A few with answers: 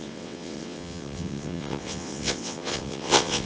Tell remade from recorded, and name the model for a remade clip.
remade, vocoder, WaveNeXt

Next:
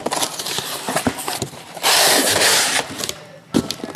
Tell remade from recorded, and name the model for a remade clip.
remade, vocoder, BigVGAN v2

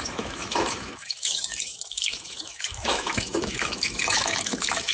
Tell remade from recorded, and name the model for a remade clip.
remade, autoencoder, DAC-VAE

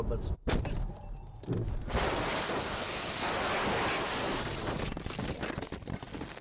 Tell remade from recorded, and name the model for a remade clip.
recorded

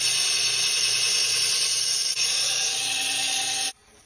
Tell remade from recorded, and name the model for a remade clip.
recorded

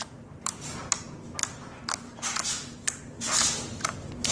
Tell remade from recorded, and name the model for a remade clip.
recorded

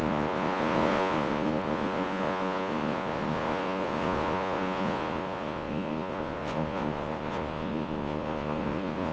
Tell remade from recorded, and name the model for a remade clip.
remade, vocoder, Vocos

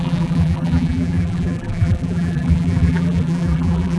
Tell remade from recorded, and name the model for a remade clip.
remade, vocoder, BigVGAN v2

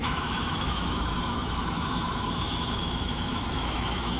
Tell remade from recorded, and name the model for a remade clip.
remade, autoencoder, DAC-VAE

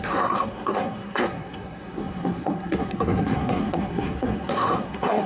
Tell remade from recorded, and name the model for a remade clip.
remade, codec, SNAC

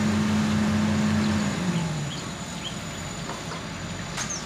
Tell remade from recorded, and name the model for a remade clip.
recorded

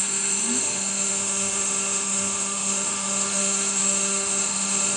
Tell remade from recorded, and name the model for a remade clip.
remade, autoencoder, DAC-VAE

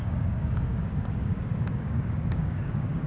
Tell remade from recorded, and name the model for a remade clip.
remade, codec, DAC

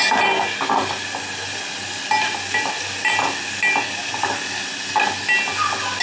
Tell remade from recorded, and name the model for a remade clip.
recorded